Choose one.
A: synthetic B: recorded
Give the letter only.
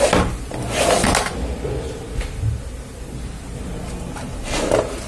B